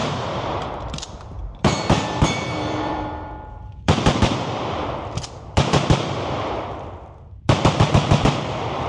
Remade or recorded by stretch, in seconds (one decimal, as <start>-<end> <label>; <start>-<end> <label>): 0.0-5.2 remade; 5.2-8.9 recorded